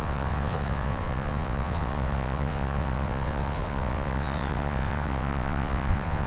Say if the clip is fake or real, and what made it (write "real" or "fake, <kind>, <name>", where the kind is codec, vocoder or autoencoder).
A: fake, vocoder, WaveNeXt